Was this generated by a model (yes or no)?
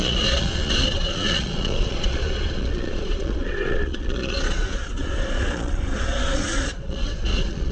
yes